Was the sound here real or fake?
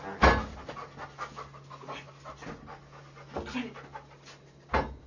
real